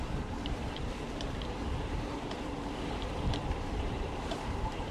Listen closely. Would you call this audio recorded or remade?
remade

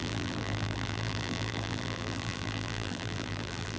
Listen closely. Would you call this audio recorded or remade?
remade